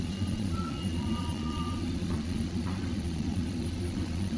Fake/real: fake